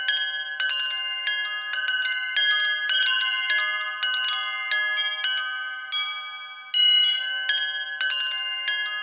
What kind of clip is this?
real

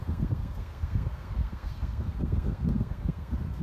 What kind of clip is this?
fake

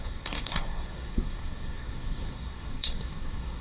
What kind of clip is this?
fake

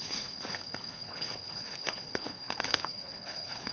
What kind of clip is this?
fake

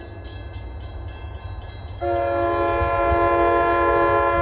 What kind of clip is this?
real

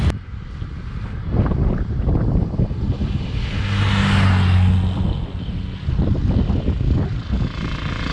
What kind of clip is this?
real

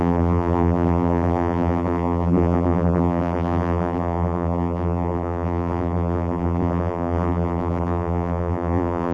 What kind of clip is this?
fake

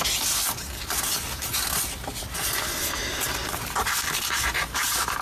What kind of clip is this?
real